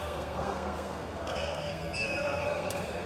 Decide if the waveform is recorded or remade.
remade